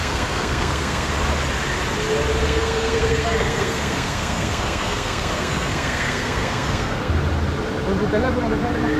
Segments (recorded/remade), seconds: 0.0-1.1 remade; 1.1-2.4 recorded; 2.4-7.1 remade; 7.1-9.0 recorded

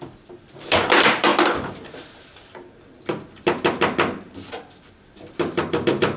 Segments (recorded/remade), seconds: 0.0-1.3 remade; 1.3-4.9 recorded; 4.9-6.2 remade

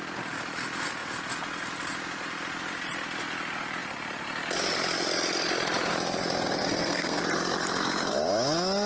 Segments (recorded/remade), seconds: 0.0-6.7 recorded; 6.7-7.2 remade; 7.2-8.9 recorded

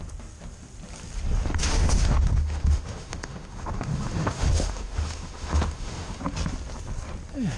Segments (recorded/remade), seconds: 0.0-1.6 recorded; 1.6-6.2 remade; 6.2-7.6 recorded

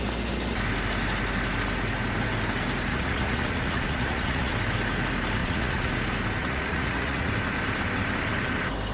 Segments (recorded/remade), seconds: 0.0-2.9 recorded; 2.9-4.5 remade; 4.5-5.4 recorded; 5.4-5.9 remade; 5.9-6.4 recorded; 6.4-7.3 remade; 7.3-8.9 recorded

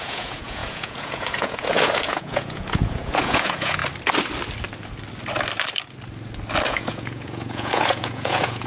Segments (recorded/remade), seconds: 0.0-3.8 remade; 3.8-6.7 recorded; 6.7-8.7 remade

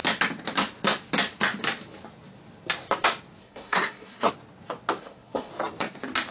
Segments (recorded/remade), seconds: 0.0-3.4 recorded; 3.4-4.3 remade; 4.3-5.0 recorded; 5.0-5.5 remade; 5.5-6.3 recorded

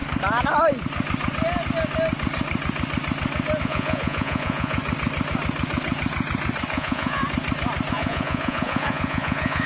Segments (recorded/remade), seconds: 0.0-3.6 recorded; 3.6-4.8 remade; 4.8-6.7 recorded; 6.7-7.2 remade; 7.2-7.9 recorded; 7.9-9.7 remade